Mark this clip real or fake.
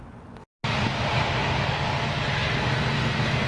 real